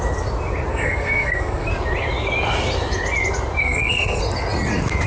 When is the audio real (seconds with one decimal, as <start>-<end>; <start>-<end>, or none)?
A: 0.0-0.7; 1.7-3.6; 4.2-5.1